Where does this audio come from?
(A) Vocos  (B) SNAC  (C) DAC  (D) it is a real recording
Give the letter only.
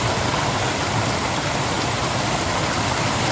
D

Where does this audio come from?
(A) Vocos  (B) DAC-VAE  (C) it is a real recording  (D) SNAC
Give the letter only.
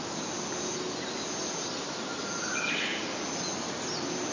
C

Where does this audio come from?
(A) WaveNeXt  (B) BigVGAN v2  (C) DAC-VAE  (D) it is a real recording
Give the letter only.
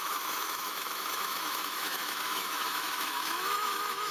C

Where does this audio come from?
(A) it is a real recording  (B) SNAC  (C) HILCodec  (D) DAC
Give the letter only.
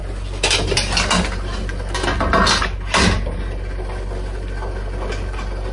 A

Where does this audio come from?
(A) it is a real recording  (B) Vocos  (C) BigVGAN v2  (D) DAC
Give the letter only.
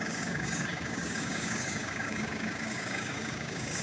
D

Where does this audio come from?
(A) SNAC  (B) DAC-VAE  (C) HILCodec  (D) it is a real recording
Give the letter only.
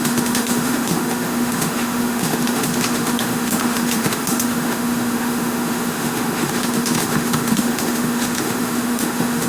B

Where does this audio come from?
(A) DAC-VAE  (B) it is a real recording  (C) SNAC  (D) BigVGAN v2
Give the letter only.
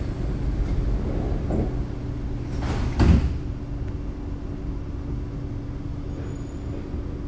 B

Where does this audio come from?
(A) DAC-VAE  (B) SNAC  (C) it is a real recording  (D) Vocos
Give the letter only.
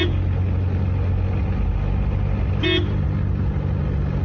C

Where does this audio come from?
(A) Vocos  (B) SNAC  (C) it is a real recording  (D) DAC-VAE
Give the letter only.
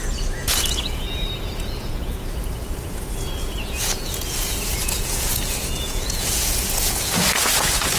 A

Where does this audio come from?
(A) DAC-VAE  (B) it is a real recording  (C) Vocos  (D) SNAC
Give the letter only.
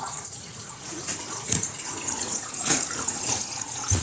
C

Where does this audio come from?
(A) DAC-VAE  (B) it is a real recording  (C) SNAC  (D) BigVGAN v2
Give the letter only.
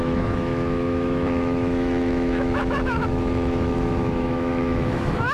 A